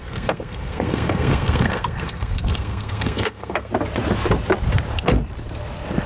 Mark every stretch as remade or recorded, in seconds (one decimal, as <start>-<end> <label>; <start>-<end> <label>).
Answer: 0.0-3.7 remade; 3.7-6.1 recorded